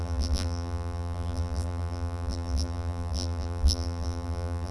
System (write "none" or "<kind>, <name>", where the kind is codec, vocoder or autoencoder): vocoder, BigVGAN v2